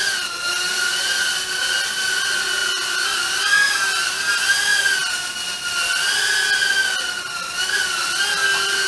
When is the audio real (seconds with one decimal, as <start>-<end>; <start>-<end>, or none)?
0.0-8.9